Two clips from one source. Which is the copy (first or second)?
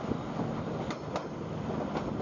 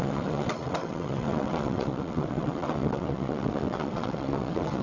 second